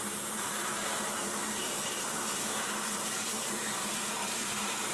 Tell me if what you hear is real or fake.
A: fake